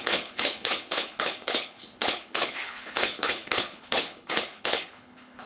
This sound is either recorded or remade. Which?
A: remade